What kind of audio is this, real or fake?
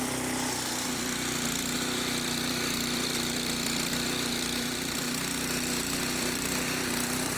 fake